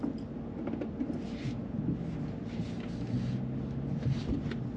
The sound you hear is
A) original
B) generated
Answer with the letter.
A